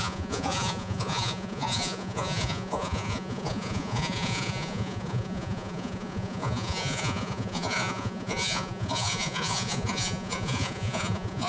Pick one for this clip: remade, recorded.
remade